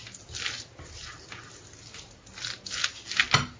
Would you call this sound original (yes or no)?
yes